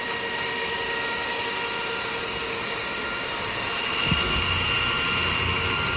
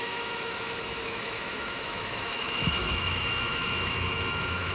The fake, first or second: second